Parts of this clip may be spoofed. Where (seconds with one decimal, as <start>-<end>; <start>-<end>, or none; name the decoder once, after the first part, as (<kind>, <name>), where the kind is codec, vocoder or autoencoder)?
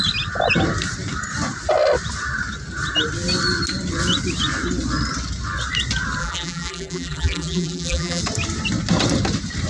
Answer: 6.2-8.2 (vocoder, BigVGAN v2)